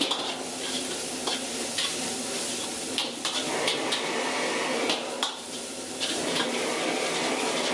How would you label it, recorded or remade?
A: recorded